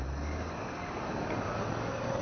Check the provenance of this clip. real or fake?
real